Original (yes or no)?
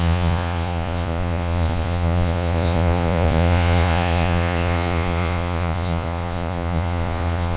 no